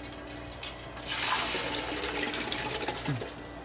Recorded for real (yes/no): yes